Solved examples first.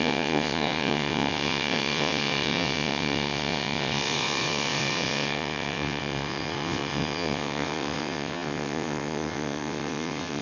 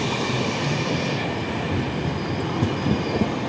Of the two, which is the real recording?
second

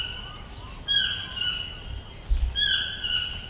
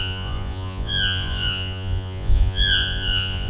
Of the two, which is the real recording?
first